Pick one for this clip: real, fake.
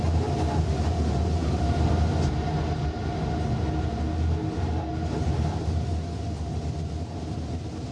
real